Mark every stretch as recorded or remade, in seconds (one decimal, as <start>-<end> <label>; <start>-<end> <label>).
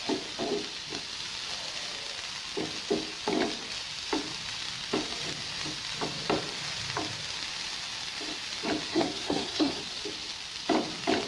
0.0-8.9 recorded; 8.9-9.8 remade; 9.8-11.3 recorded